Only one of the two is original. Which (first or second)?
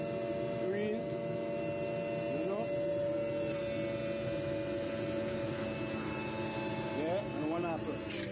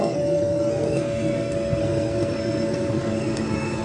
first